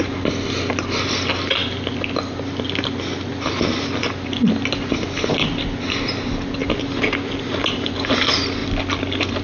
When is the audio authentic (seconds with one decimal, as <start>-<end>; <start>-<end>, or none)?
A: 0.0-8.6